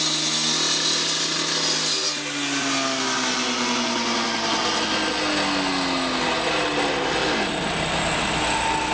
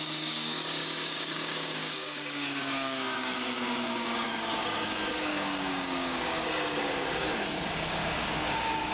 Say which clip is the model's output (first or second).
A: second